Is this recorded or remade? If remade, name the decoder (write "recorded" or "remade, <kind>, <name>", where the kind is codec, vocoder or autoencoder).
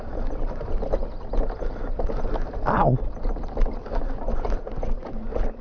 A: recorded